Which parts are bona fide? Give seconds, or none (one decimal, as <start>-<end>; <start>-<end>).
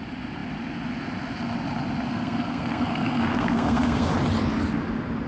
0.0-2.1; 4.1-5.3